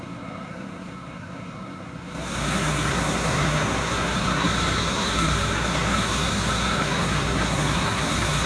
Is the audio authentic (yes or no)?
no